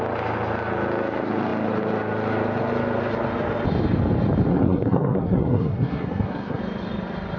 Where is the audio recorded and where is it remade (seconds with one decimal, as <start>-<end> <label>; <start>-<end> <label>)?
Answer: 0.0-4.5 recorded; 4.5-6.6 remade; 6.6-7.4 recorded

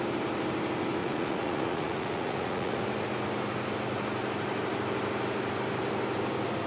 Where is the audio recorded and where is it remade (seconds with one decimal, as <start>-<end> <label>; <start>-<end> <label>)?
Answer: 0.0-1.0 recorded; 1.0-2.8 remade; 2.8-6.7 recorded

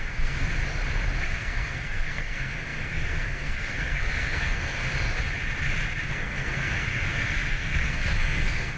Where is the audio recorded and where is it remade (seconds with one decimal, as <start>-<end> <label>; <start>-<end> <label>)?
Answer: 0.0-0.6 remade; 0.6-1.2 recorded; 1.2-4.8 remade; 4.8-6.1 recorded; 6.1-8.8 remade

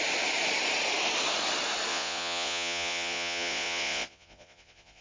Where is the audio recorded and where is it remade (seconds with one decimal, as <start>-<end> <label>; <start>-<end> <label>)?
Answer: 0.0-1.9 recorded; 1.9-5.0 remade

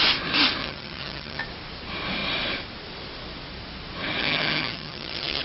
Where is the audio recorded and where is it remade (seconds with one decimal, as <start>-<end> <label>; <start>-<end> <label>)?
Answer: 0.0-0.6 recorded; 0.6-1.4 remade; 1.4-4.2 recorded; 4.2-5.4 remade